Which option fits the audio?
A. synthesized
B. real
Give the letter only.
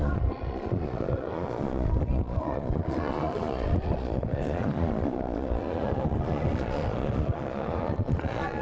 A